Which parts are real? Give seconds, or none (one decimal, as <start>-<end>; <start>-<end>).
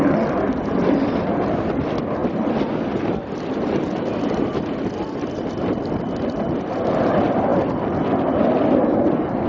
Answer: 7.5-8.5